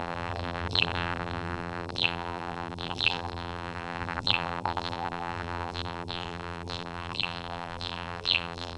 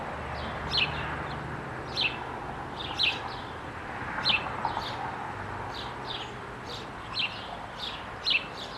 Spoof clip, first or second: first